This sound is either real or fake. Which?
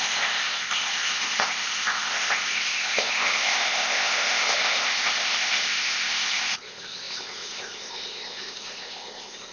fake